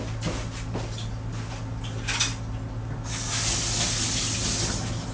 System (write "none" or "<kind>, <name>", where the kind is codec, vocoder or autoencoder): none